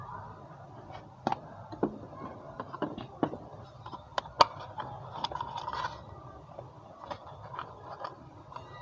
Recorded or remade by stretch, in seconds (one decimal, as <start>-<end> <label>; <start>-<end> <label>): 0.0-8.8 recorded